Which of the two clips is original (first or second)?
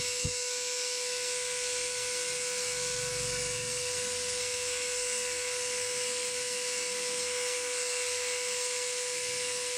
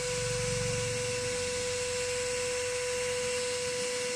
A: second